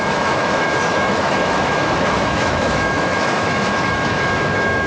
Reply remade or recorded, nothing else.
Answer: remade